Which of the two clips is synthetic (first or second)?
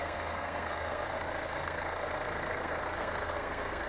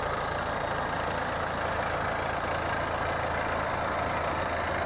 first